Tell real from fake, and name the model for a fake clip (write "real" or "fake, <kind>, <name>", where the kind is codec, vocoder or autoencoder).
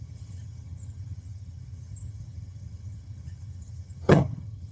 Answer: fake, vocoder, HiFi-GAN